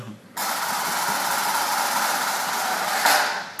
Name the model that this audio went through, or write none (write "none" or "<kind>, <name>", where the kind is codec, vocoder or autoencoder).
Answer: none